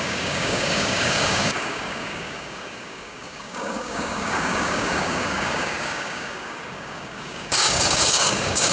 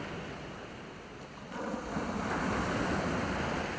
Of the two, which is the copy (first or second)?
first